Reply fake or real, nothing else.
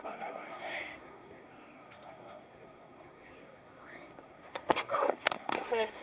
fake